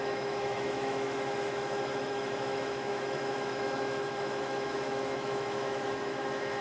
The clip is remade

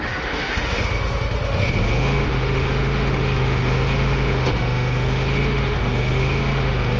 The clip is remade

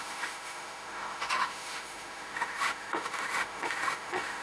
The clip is remade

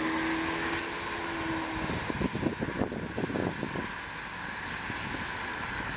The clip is recorded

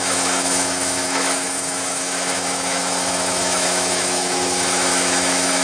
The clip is remade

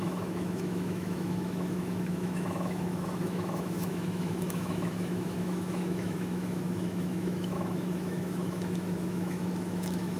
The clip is remade